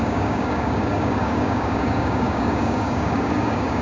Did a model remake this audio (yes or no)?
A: yes